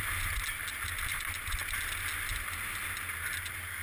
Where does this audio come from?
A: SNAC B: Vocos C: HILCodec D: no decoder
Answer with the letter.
D